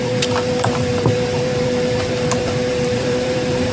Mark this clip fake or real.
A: fake